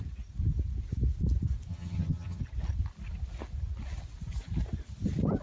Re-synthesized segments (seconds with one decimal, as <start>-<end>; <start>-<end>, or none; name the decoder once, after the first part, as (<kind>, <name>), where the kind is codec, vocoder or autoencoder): 1.7-2.4 (vocoder, HiFi-GAN)